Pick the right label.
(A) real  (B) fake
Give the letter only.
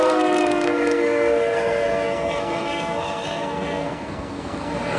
B